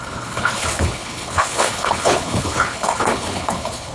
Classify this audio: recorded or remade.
remade